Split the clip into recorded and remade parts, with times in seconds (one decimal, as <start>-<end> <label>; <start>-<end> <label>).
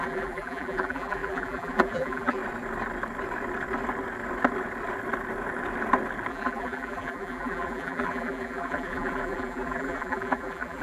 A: 0.0-2.4 remade; 2.4-6.3 recorded; 6.3-10.8 remade